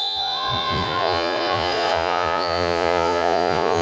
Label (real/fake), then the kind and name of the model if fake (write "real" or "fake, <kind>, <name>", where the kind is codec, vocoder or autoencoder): fake, vocoder, Vocos